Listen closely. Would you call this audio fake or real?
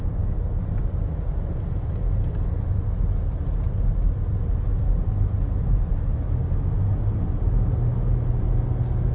real